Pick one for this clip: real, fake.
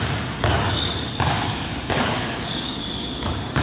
fake